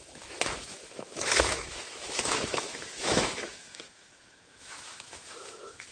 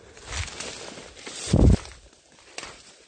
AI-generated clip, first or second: first